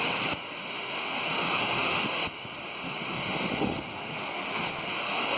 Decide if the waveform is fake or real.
fake